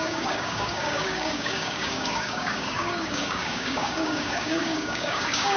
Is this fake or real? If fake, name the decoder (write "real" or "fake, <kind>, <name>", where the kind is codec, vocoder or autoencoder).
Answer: fake, codec, DAC